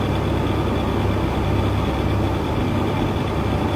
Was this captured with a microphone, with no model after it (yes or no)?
yes